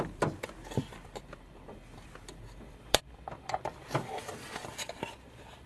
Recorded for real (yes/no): no